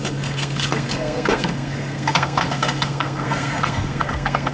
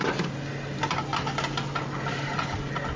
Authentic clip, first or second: second